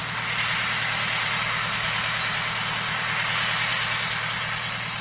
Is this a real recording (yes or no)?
yes